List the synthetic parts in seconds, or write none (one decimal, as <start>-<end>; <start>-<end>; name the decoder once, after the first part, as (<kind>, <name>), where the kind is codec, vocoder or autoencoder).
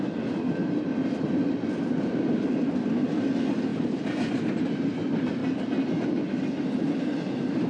none